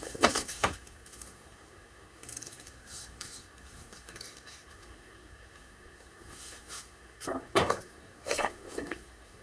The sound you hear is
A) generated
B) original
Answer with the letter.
A